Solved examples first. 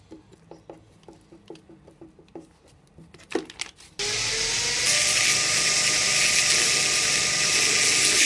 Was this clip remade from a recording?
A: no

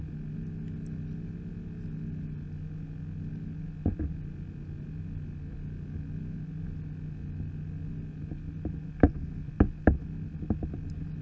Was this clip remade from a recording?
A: no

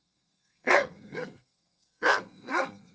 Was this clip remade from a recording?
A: yes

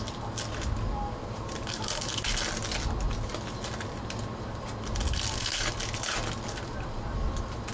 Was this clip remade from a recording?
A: no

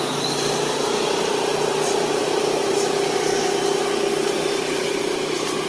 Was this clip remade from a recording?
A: no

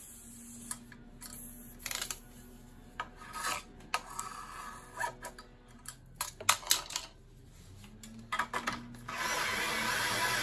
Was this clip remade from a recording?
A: no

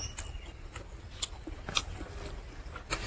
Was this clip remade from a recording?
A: no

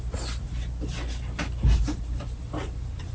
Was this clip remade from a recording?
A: no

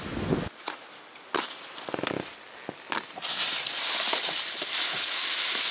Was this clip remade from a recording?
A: no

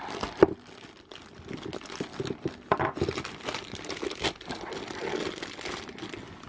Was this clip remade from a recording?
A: no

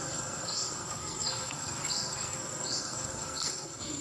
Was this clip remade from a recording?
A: yes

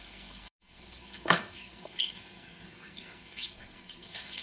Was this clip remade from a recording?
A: yes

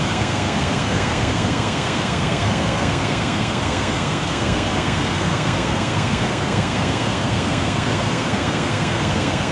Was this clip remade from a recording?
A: yes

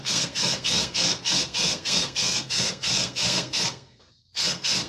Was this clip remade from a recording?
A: yes